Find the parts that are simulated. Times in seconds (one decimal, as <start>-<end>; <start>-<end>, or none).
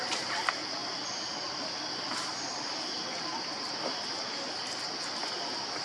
none